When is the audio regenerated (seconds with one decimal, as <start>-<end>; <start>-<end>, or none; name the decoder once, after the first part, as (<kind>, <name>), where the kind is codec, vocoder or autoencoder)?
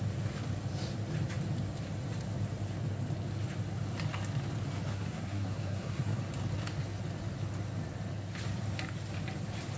4.9-6.2 (codec, SNAC)